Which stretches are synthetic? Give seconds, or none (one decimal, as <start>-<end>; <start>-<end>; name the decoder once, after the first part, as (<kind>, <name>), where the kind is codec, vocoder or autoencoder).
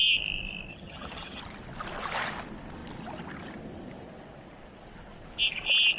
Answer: 0.7-1.4 (vocoder, HiFi-GAN)